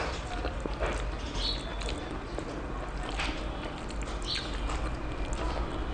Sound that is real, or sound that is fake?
real